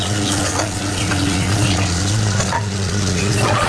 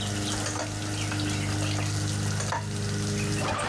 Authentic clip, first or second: second